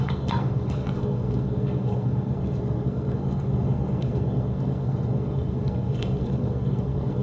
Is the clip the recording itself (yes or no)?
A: no